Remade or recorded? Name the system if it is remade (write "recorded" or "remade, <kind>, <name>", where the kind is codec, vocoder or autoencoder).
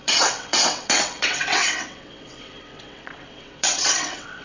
remade, vocoder, WaveNeXt